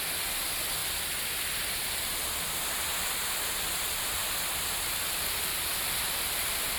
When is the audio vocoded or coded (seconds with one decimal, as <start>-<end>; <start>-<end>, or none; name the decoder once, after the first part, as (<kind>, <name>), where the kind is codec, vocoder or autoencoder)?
2.9-3.5 (vocoder, BigVGAN v2)